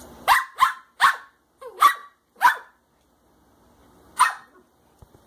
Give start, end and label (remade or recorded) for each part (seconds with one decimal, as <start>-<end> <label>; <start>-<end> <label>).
0.0-3.8 recorded; 3.8-5.3 remade